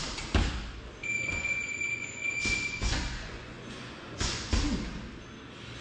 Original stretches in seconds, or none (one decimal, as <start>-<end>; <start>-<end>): 0.0-1.0; 4.5-5.8